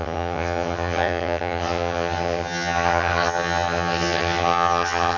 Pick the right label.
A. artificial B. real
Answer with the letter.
A